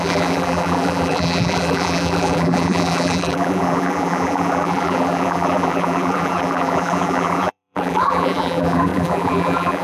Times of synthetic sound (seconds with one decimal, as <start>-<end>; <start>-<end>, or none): 0.0-9.8